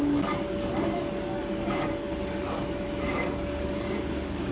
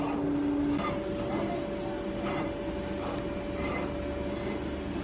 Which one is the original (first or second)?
second